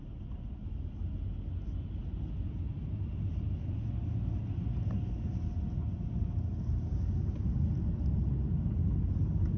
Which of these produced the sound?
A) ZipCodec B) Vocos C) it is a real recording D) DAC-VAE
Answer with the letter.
C